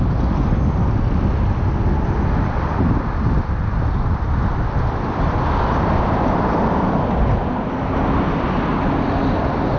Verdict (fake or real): real